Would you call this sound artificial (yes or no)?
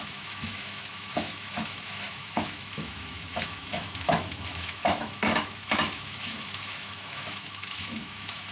yes